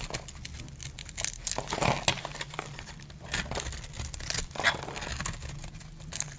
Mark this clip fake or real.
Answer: real